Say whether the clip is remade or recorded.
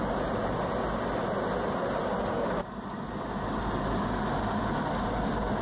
recorded